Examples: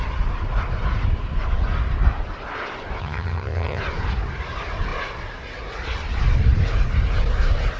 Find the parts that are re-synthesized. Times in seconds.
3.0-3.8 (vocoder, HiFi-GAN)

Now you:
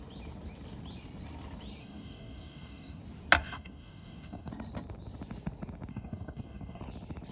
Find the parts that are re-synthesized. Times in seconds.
1.8-3.0 (codec, DAC); 3.4-4.5; 5.9-6.8

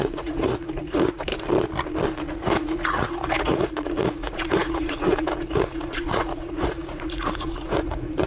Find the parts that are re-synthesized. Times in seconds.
0.0-1.3 (vocoder, Vocos); 2.2-8.3

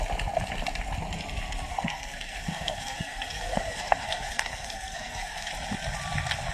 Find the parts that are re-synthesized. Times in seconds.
1.7-5.5 (codec, SNAC)

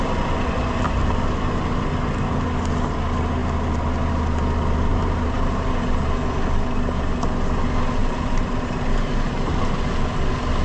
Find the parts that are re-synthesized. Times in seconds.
4.9-5.9 (vocoder, BigVGAN v2); 8.0-9.6

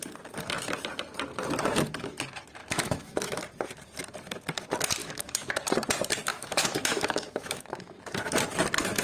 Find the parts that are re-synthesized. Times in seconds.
2.6-3.4 (autoencoder, DAC-VAE); 5.0-5.5; 6.3-8.0

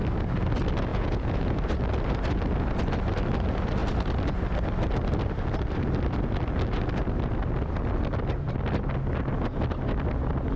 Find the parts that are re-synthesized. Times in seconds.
0.9-1.6 (vocoder, Vocos)